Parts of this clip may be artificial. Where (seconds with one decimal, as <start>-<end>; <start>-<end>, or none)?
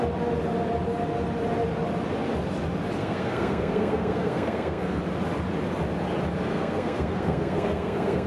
3.0-5.0; 6.5-8.3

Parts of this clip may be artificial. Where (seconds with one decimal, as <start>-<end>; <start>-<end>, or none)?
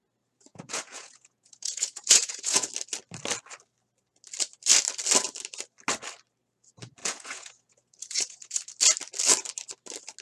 0.5-2.7; 7.0-8.6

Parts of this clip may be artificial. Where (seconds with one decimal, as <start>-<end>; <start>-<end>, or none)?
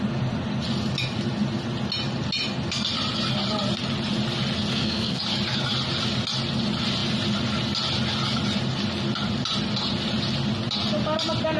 4.7-5.2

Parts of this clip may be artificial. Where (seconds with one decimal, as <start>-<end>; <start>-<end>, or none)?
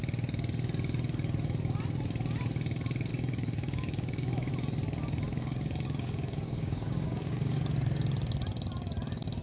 3.1-4.5; 5.0-7.6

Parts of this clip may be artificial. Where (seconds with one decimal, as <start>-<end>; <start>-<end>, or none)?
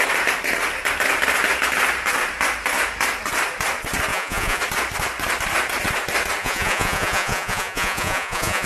4.1-4.6; 6.4-8.7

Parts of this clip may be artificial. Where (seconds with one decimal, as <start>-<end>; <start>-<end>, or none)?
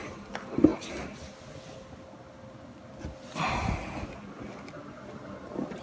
none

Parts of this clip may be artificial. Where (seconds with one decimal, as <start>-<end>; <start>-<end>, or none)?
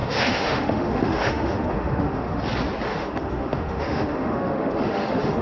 0.0-2.4; 2.9-5.4